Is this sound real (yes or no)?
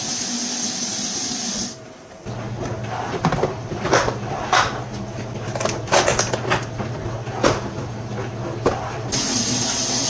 yes